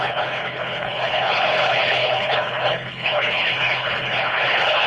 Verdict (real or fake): fake